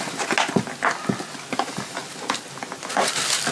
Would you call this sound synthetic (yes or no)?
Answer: no